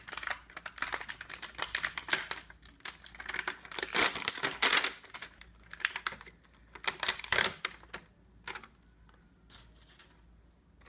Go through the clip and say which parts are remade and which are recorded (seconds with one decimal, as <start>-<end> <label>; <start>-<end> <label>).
0.0-10.9 recorded